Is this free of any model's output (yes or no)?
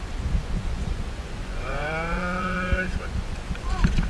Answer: no